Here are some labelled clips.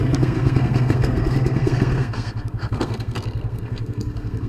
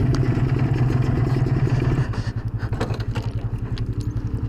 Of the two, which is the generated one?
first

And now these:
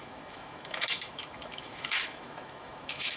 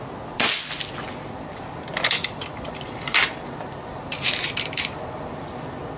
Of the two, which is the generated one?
first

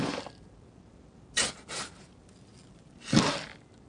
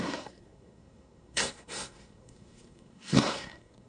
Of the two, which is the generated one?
second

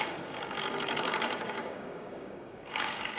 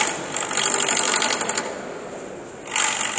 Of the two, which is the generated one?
first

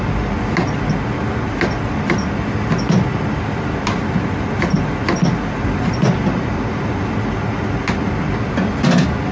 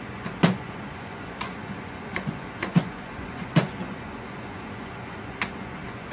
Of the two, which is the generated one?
second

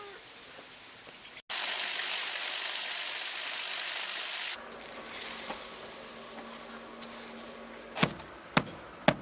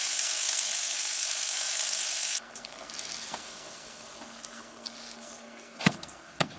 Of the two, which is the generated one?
second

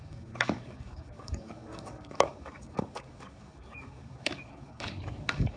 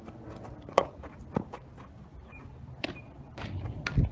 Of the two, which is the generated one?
first